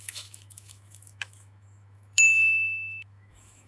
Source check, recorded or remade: remade